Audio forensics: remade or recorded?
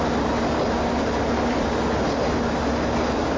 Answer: recorded